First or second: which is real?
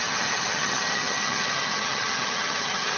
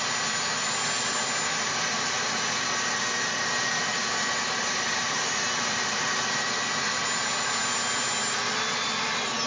second